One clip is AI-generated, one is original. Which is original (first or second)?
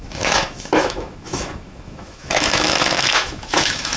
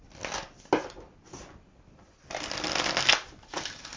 second